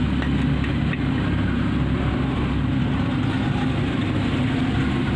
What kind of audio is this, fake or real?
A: real